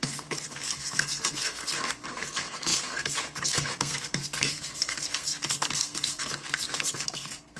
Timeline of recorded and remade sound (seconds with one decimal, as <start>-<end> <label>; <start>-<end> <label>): 0.0-7.6 remade

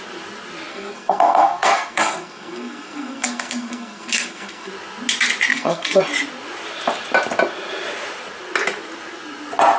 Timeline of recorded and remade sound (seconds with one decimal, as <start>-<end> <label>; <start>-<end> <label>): 0.0-0.7 recorded; 0.7-4.7 remade; 4.7-5.5 recorded; 5.5-6.0 remade; 6.0-9.8 recorded

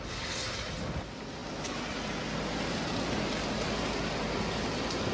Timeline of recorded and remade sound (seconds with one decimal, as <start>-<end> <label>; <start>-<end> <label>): 0.0-5.1 recorded

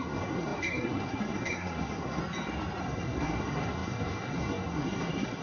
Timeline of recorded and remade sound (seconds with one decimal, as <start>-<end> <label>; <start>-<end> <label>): 0.0-2.2 remade; 2.2-2.8 recorded; 2.8-5.4 remade

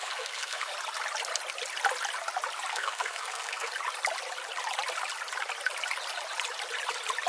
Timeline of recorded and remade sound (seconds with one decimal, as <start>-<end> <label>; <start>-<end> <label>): 0.0-0.7 remade; 0.7-2.7 recorded; 2.7-3.7 remade; 3.7-7.3 recorded

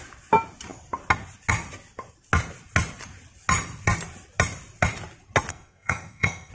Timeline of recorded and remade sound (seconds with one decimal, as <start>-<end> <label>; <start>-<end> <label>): 0.0-5.5 recorded; 5.5-6.5 remade